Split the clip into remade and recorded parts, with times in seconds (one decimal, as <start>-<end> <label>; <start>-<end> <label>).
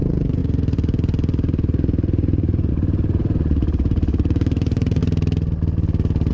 0.0-5.0 remade; 5.0-6.3 recorded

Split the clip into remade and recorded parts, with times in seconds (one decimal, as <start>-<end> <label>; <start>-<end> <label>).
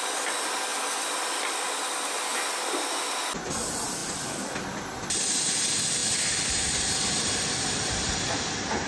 0.0-8.9 recorded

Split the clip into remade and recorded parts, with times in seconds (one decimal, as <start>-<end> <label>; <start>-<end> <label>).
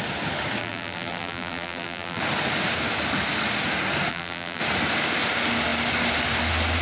0.0-0.6 recorded; 0.6-2.2 remade; 2.2-4.1 recorded; 4.1-4.6 remade; 4.6-6.8 recorded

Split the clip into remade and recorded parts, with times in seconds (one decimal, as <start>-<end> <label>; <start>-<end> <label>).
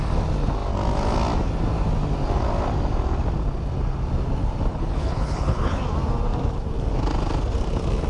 0.0-4.7 recorded; 4.7-5.8 remade; 5.8-8.1 recorded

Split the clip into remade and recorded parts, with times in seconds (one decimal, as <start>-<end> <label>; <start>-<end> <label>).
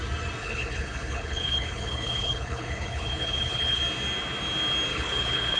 0.0-0.4 recorded; 0.4-3.8 remade; 3.8-4.9 recorded; 4.9-5.6 remade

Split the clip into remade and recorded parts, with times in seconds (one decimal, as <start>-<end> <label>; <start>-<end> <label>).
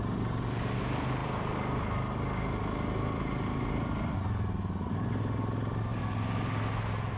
0.0-7.2 recorded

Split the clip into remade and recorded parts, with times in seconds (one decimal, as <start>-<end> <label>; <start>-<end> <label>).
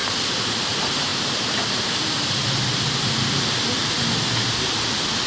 0.0-5.3 recorded